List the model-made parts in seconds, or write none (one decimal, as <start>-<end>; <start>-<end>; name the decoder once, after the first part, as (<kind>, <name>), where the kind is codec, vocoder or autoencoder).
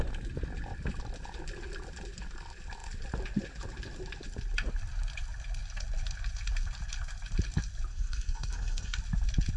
7.9-9.0 (codec, SNAC)